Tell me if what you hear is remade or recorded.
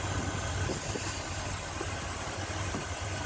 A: recorded